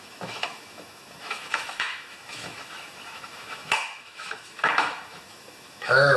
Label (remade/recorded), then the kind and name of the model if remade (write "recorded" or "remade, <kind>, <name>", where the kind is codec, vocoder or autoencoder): remade, autoencoder, DAC-VAE